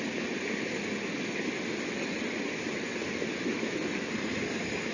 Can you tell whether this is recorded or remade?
recorded